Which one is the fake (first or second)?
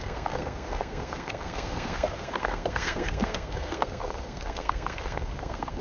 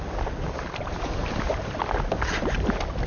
first